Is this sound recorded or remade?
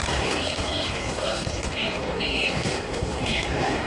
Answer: remade